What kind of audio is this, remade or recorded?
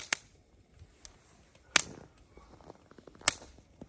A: recorded